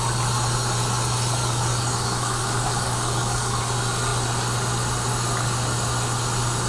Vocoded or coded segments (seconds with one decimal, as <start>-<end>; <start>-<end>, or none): 1.4-3.6